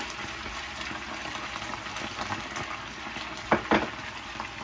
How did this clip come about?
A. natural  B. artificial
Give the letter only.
A